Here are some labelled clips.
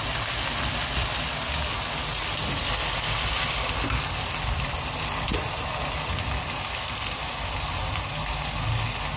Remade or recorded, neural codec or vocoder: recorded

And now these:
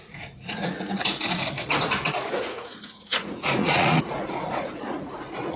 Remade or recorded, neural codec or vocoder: remade, vocoder, Vocos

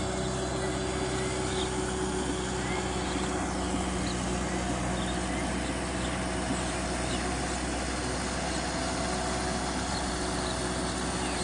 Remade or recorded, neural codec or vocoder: recorded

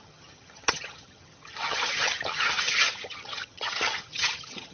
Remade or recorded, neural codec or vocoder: remade, vocoder, HiFi-GAN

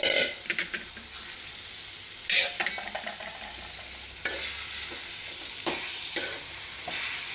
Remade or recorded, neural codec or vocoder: recorded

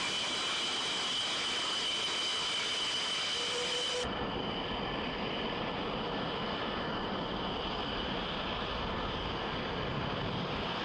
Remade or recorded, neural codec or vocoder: recorded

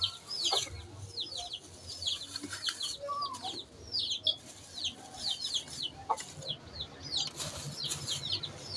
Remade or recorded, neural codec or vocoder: recorded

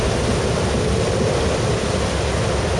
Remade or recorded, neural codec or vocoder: recorded